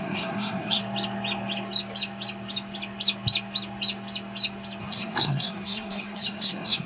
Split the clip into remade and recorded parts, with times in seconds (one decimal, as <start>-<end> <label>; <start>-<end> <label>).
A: 0.0-0.8 remade; 0.8-4.8 recorded; 4.8-6.9 remade